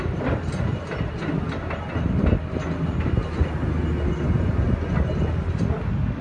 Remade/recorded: recorded